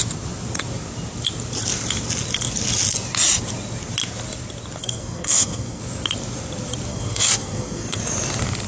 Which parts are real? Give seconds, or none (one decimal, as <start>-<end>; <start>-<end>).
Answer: 0.0-4.8; 5.8-6.9; 8.0-8.7